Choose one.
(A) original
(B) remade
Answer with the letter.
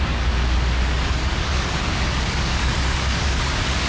B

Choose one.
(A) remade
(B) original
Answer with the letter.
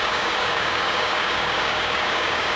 A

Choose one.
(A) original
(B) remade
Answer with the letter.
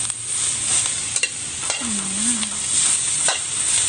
A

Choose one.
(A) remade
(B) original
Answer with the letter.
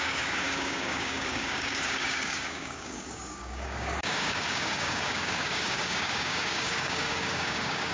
A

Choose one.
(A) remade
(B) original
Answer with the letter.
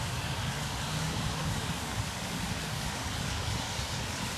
A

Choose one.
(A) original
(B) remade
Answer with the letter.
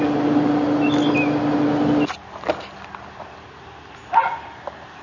A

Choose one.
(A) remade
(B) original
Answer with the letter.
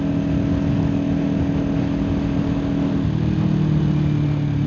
B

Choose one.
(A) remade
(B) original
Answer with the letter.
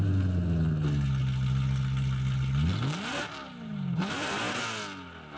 B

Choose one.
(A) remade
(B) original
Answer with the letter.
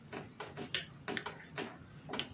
B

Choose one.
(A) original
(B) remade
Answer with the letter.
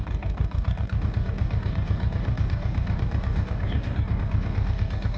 B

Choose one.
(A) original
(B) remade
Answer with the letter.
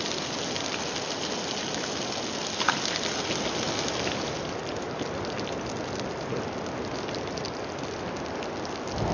A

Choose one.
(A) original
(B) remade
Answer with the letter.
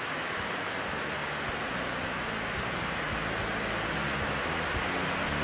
A